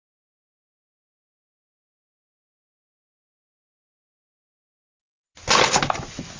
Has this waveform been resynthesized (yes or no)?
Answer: no